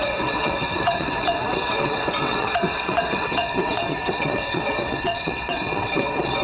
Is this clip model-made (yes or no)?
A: yes